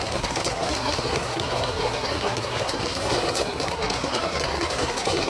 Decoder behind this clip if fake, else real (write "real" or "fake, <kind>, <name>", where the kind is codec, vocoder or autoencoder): fake, codec, SNAC